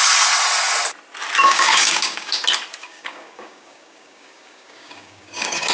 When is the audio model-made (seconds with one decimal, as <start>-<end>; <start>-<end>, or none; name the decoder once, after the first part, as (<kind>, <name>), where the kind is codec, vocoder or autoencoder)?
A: 1.4-2.4 (codec, DAC); 2.8-5.7